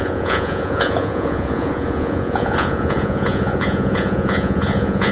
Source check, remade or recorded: remade